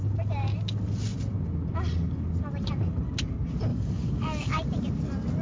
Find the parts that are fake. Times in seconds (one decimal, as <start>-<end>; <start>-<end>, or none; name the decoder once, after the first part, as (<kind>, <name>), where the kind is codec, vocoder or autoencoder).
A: 3.7-4.5 (codec, DAC)